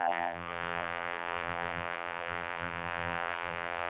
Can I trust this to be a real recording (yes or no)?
no